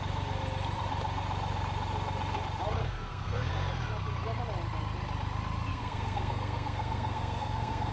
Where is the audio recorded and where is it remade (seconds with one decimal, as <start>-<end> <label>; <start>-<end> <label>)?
0.0-2.8 recorded; 2.8-3.5 remade; 3.5-5.7 recorded; 5.7-7.9 remade